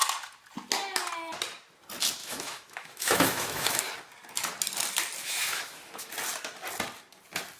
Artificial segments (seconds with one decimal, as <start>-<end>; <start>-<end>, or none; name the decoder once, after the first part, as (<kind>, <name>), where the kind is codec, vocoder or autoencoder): 2.2-3.8 (autoencoder, DAC-VAE); 5.2-6.1